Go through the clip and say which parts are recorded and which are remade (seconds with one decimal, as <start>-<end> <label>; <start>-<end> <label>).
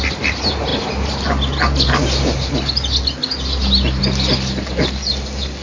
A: 0.0-5.6 recorded